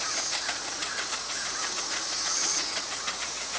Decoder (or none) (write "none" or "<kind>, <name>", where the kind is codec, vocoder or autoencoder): vocoder, Vocos